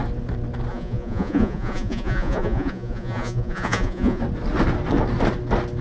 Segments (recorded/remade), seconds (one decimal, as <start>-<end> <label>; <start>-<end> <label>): 0.0-0.7 recorded; 0.7-4.2 remade; 4.2-5.8 recorded